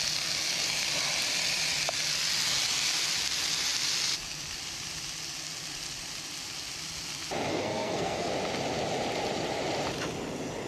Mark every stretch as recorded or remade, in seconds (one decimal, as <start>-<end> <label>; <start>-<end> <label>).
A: 0.0-7.5 recorded; 7.5-8.3 remade; 8.3-10.7 recorded